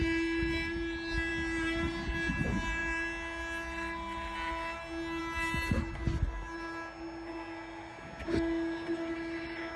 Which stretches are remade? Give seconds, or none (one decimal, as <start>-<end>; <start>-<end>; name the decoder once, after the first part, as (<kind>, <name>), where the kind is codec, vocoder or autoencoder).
none